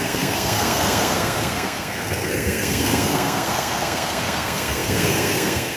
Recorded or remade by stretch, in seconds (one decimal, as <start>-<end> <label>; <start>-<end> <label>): 0.0-5.8 remade